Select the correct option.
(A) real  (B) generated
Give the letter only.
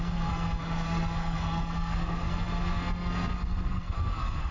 B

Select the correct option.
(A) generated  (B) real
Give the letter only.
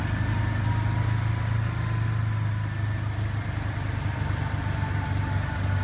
B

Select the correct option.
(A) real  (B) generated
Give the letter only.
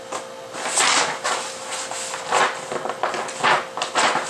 A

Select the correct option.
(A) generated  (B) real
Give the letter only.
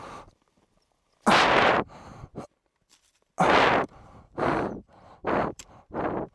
B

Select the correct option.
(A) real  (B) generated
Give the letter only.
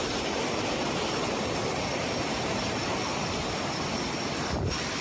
A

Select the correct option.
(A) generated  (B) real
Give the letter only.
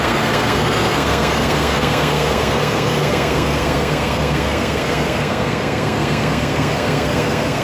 A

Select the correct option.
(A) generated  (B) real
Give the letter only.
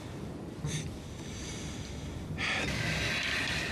B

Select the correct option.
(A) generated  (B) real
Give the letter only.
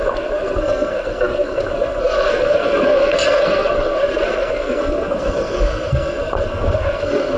A